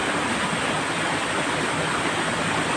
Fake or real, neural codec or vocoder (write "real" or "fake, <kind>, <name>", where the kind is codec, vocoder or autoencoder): real